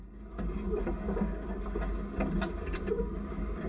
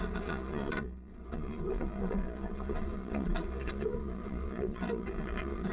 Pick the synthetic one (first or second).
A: second